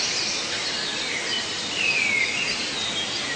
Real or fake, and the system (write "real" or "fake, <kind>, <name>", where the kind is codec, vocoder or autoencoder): real